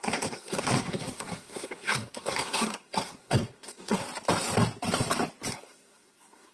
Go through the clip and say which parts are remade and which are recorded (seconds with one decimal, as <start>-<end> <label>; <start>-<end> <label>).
0.0-4.0 remade; 4.0-5.5 recorded; 5.5-6.5 remade

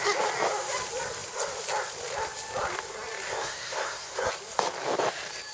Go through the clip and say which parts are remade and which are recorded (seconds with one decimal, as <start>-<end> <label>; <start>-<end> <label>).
0.0-3.3 recorded; 3.3-4.3 remade; 4.3-5.5 recorded

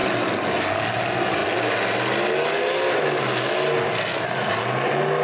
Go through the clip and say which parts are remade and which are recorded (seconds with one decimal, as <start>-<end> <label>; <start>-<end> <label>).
0.0-5.2 recorded

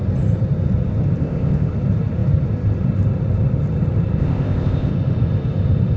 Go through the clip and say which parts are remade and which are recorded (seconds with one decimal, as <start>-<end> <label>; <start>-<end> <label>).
0.0-1.2 recorded; 1.2-1.7 remade; 1.7-4.2 recorded; 4.2-4.9 remade; 4.9-6.0 recorded